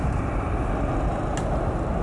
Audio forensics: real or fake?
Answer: real